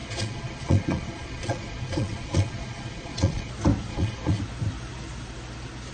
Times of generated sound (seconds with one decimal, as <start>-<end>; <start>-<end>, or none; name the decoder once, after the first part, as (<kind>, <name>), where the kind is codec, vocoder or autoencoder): 0.0-3.5 (vocoder, Vocos); 3.9-4.4